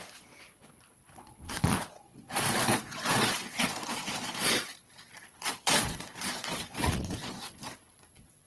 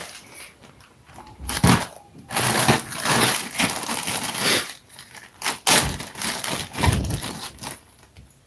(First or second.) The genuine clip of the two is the second